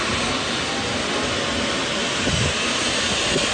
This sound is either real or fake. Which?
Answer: real